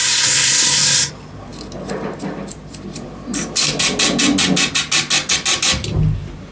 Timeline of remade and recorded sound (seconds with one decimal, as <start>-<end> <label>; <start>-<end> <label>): 0.0-1.1 remade; 1.1-6.5 recorded